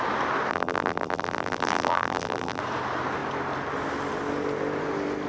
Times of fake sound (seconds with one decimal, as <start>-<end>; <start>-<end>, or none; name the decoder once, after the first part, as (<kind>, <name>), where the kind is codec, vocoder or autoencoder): 0.5-2.6 (vocoder, BigVGAN v2)